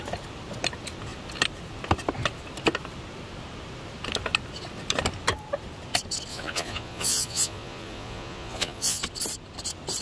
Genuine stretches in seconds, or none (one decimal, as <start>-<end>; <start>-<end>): 0.0-6.3; 9.0-10.0